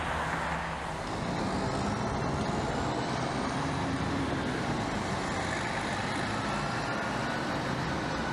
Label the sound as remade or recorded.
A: recorded